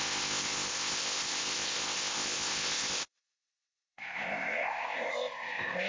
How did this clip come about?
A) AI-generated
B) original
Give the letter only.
A